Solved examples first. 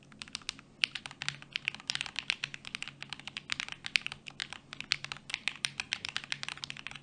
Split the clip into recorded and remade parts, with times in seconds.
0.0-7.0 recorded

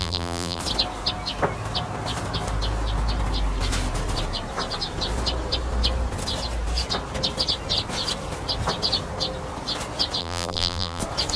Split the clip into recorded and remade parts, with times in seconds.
0.0-0.6 remade; 0.6-10.2 recorded; 10.2-11.0 remade; 11.0-11.4 recorded

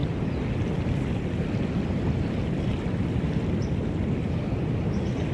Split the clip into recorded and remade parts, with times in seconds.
0.0-5.3 recorded

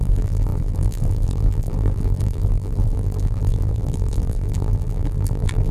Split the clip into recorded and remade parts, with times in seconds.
0.0-5.7 remade

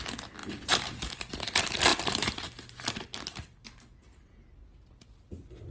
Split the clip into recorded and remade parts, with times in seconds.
0.0-0.4 recorded; 0.4-1.1 remade; 1.1-1.9 recorded; 1.9-4.3 remade; 4.3-5.7 recorded

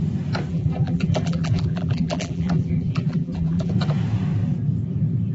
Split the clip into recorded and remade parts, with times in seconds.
0.0-0.5 recorded; 0.5-3.7 remade; 3.7-5.3 recorded